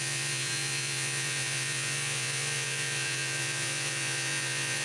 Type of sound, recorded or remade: remade